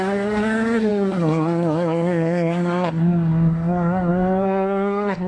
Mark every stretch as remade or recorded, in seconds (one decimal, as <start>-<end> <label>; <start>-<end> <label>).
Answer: 0.0-5.3 remade